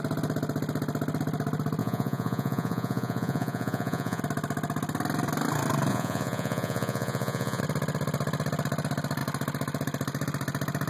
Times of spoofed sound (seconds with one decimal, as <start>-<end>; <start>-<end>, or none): 1.8-4.2; 5.9-7.6